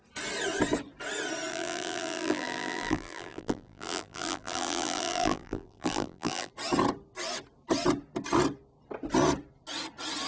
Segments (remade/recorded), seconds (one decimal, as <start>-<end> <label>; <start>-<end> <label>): 0.0-1.5 recorded; 1.5-6.5 remade; 6.5-10.3 recorded